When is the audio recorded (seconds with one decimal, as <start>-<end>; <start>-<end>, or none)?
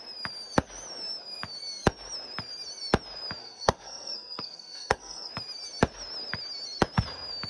0.0-3.4; 5.3-7.5